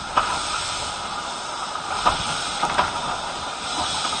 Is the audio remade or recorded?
recorded